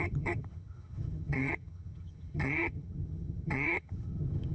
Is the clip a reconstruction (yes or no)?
yes